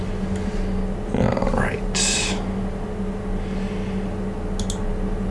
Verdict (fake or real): real